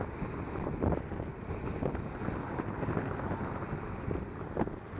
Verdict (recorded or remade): recorded